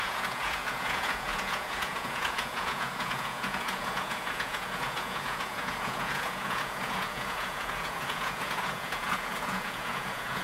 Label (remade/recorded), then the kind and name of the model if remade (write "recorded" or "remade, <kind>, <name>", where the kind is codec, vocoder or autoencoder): remade, vocoder, Vocos